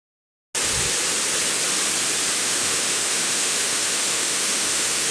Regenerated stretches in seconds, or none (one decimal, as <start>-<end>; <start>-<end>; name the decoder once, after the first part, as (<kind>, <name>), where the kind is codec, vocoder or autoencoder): 2.4-5.1 (autoencoder, DAC-VAE)